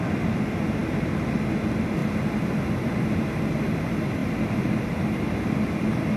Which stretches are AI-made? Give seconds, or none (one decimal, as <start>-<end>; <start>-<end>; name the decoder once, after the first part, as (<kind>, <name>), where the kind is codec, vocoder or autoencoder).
none